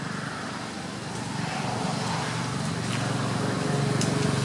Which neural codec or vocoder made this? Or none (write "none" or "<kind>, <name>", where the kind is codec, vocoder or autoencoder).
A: none